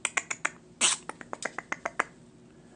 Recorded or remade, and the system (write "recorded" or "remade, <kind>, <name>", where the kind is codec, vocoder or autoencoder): recorded